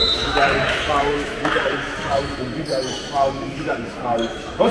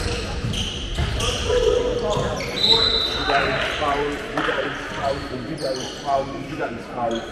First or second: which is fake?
first